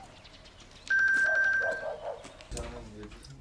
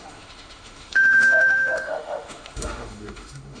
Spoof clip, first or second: second